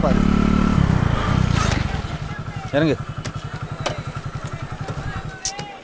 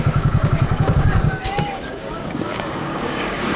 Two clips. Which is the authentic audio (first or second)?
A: first